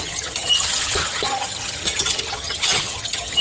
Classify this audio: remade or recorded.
remade